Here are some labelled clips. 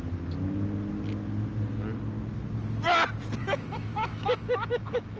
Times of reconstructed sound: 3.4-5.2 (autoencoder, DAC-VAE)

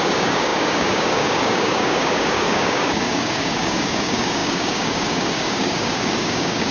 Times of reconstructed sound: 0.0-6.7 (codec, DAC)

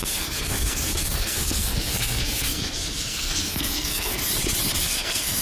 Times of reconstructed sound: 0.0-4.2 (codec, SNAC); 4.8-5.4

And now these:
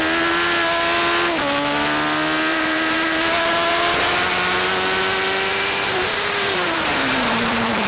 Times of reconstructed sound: 2.5-4.1 (vocoder, BigVGAN v2); 5.5-7.9